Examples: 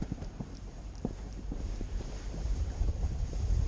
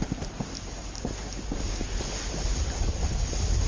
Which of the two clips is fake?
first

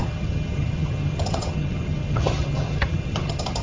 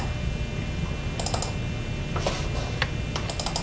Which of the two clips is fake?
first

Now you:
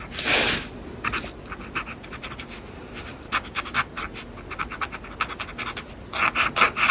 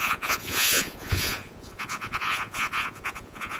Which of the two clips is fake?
second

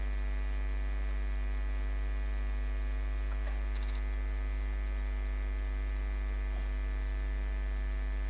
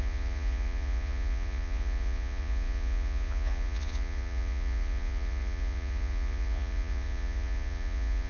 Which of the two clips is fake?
second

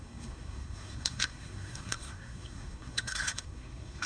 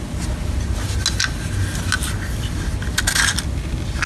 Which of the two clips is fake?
first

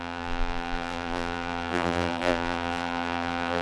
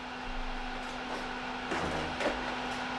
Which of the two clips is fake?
first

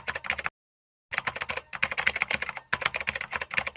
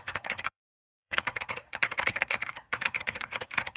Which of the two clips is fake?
second